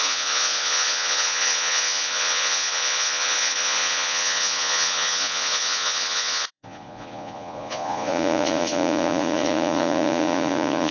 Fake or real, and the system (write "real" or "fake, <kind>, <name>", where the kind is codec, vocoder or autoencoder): fake, vocoder, Vocos